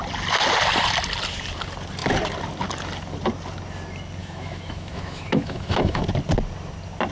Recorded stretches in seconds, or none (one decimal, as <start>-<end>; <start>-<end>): 0.0-4.2; 6.0-7.1